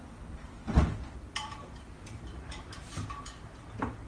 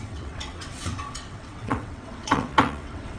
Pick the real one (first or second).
first